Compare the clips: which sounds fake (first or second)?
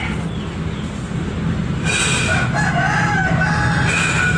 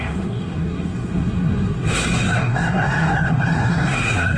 second